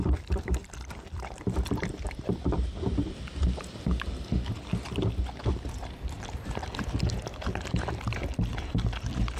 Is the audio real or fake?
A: real